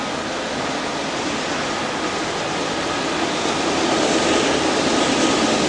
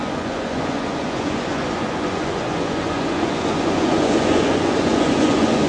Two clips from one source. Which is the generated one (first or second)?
second